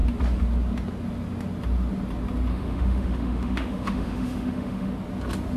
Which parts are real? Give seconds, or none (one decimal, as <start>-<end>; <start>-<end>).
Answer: 0.0-2.5; 4.9-5.6